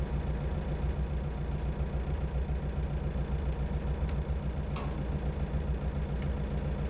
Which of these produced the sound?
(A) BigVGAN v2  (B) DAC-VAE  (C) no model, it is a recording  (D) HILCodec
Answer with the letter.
C